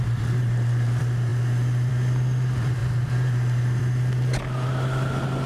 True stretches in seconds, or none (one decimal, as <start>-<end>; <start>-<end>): 0.0-5.5

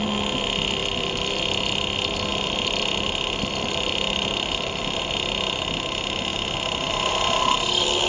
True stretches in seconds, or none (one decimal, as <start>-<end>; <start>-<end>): 0.0-0.8; 1.4-2.3; 5.0-6.3; 6.9-8.1

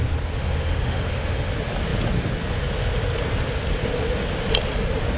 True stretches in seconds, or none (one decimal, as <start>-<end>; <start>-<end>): 0.0-0.4; 1.5-5.2